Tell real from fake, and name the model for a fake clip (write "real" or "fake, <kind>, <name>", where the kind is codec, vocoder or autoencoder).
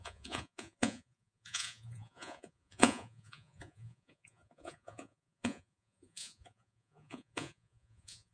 fake, vocoder, Vocos